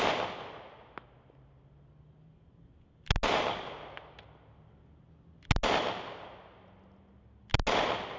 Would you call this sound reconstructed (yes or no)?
no